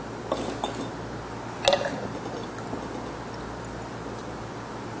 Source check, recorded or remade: recorded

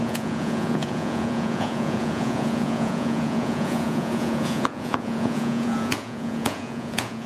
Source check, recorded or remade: remade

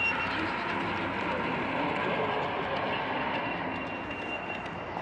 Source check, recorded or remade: recorded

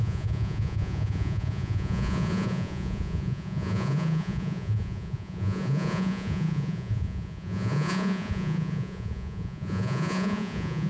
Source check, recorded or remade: remade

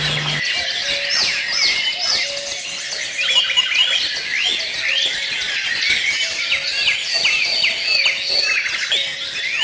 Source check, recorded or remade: recorded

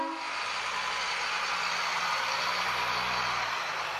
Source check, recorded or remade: recorded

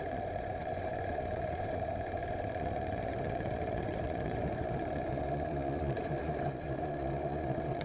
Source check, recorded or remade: remade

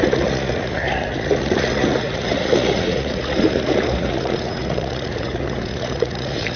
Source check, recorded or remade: remade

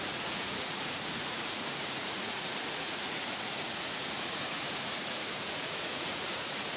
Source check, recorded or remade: remade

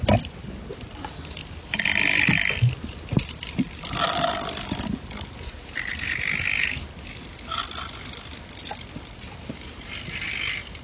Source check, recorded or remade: recorded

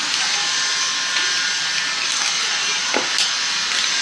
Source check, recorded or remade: recorded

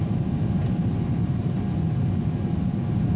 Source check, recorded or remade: recorded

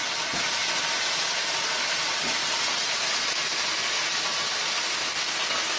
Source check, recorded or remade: recorded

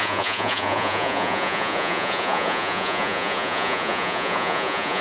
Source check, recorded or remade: remade